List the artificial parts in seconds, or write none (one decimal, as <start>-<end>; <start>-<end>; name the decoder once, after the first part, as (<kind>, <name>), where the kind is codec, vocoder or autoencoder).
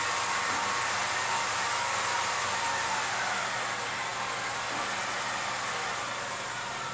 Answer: none